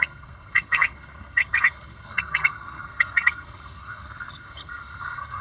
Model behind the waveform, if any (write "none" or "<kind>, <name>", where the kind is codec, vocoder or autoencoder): codec, SNAC